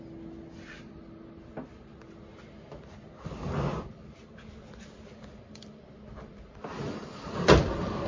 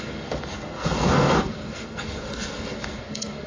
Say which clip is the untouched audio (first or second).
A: first